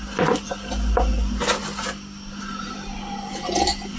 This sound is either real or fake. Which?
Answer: real